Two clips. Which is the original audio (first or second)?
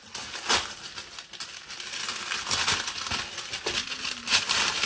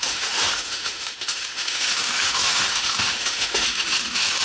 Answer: first